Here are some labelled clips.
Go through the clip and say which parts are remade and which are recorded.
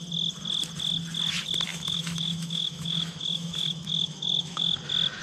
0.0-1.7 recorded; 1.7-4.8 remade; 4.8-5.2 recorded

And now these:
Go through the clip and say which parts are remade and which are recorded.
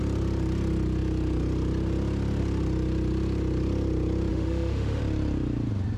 0.0-4.3 recorded; 4.3-5.0 remade; 5.0-6.0 recorded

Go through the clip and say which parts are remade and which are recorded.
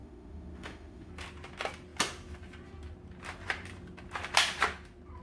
0.0-1.1 remade; 1.1-5.2 recorded